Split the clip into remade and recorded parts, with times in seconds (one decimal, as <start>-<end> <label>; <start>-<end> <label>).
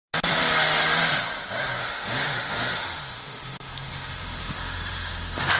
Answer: 0.0-1.8 recorded; 1.8-5.6 remade